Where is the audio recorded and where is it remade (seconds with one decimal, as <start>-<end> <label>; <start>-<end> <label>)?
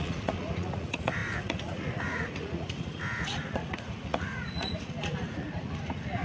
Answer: 0.0-6.2 remade